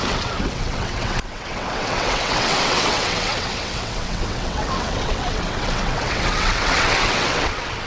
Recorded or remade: remade